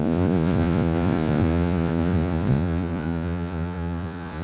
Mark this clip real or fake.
fake